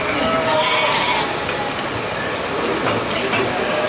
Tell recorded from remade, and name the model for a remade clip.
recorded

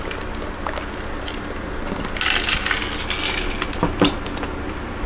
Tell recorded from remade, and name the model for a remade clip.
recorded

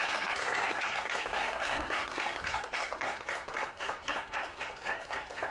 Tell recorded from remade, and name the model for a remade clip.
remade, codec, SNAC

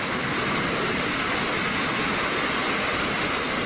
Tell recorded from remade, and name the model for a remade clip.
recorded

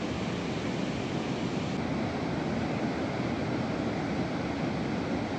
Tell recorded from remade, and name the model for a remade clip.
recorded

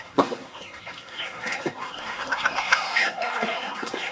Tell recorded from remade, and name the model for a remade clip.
remade, codec, SNAC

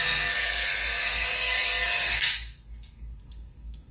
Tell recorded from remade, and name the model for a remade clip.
remade, codec, SNAC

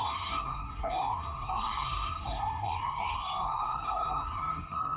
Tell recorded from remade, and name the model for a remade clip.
remade, codec, SNAC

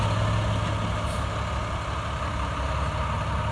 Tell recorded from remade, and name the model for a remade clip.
recorded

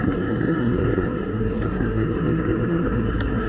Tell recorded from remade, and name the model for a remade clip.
remade, codec, SNAC